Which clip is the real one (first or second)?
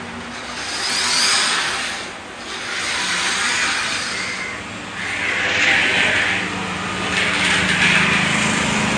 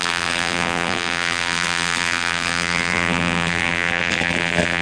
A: first